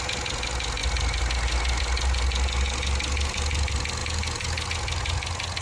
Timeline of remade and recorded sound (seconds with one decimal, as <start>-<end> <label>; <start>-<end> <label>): 0.0-4.0 recorded; 4.0-4.7 remade; 4.7-5.6 recorded